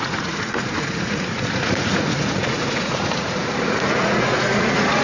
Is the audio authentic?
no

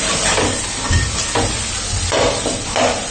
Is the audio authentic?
yes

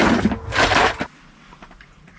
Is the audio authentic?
yes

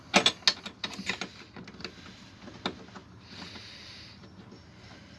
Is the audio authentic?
yes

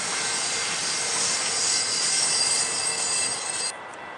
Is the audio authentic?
yes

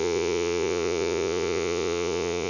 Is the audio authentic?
no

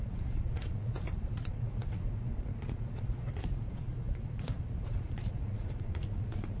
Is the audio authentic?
no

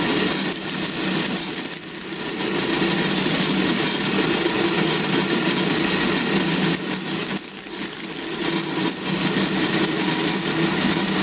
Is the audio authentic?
yes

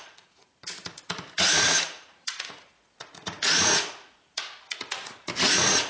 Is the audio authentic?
no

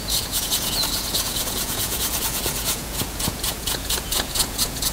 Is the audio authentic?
no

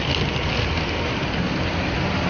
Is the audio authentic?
yes